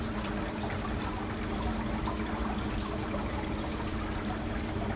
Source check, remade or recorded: recorded